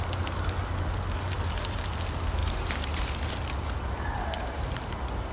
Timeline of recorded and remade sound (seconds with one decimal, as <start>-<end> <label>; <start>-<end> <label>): 0.0-2.4 recorded; 2.4-3.3 remade; 3.3-5.3 recorded

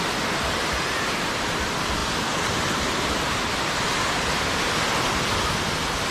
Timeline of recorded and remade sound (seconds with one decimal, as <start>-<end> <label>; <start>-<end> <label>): 0.0-6.1 recorded